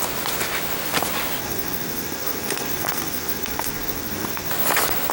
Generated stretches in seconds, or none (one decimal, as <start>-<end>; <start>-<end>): 1.4-4.5

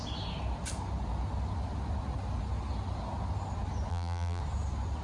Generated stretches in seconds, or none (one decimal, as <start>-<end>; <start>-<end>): 3.9-4.4